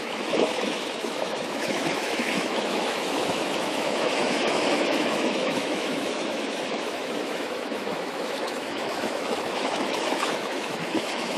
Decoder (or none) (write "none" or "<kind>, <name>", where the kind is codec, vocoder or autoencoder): autoencoder, DAC-VAE